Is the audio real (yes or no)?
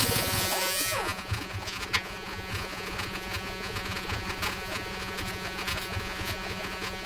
no